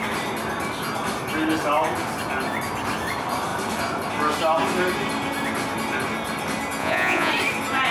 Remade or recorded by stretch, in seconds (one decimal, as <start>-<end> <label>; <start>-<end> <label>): 0.0-6.8 recorded; 6.8-7.3 remade; 7.3-7.9 recorded